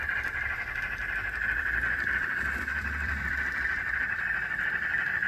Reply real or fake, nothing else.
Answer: fake